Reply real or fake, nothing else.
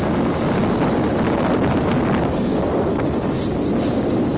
real